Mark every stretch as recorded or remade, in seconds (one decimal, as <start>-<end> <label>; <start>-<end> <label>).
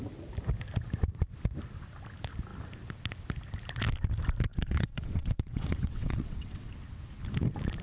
0.0-4.5 recorded; 4.5-6.7 remade; 6.7-7.8 recorded